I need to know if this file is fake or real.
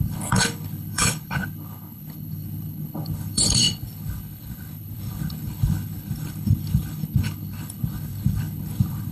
fake